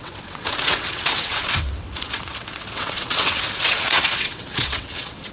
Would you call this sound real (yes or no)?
no